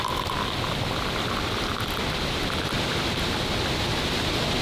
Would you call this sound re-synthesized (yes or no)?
no